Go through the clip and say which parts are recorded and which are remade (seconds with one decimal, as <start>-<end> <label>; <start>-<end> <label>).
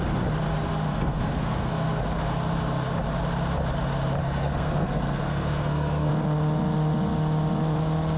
0.0-0.9 recorded; 0.9-1.7 remade; 1.7-4.2 recorded; 4.2-6.1 remade; 6.1-8.2 recorded